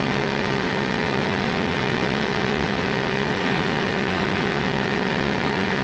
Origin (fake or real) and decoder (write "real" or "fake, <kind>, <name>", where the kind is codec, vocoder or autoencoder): fake, vocoder, WaveNeXt